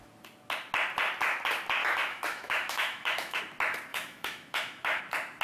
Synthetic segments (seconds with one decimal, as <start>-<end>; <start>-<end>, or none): 1.8-3.4; 3.9-5.0